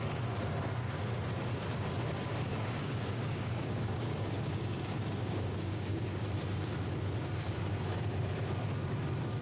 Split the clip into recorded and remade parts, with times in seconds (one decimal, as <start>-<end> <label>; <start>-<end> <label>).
0.0-2.5 recorded; 2.5-6.2 remade; 6.2-9.4 recorded